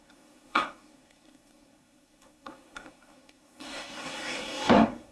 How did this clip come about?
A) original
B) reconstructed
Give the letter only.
B